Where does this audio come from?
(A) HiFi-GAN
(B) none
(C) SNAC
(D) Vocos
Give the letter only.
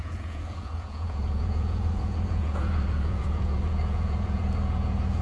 D